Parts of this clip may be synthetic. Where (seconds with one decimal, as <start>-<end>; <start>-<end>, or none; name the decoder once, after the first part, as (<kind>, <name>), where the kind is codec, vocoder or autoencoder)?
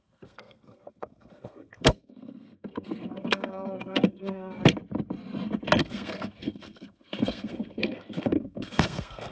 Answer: 0.0-4.6 (codec, SNAC); 5.8-9.3